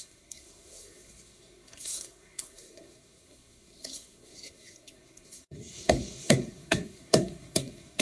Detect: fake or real fake